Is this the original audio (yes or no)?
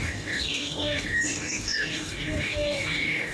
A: no